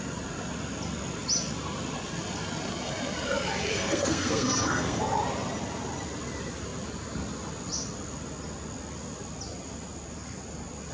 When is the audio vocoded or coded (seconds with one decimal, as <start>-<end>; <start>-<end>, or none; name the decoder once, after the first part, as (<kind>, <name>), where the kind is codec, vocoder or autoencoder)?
3.7-5.0 (codec, SNAC)